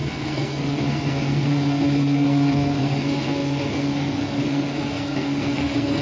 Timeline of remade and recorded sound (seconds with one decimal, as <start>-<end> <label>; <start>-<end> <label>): 0.0-6.0 remade

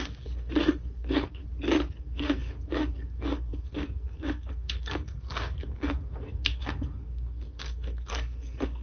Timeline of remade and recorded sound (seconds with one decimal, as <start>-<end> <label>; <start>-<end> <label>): 0.0-1.4 remade; 1.4-2.0 recorded; 2.0-8.8 remade

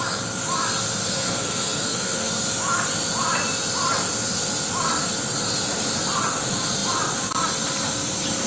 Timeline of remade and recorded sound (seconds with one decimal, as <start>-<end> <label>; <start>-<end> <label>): 0.0-1.0 recorded; 1.0-2.3 remade; 2.3-8.5 recorded

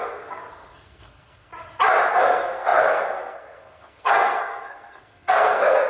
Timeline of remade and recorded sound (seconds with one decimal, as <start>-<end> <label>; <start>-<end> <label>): 0.0-1.5 remade; 1.5-2.1 recorded; 2.1-5.9 remade

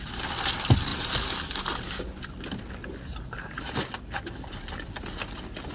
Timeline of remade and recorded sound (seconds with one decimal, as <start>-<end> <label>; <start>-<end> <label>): 0.0-5.7 recorded